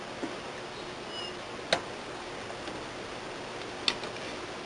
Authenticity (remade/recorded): recorded